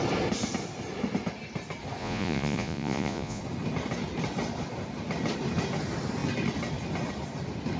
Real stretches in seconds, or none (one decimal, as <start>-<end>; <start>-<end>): 0.0-2.0; 3.4-7.8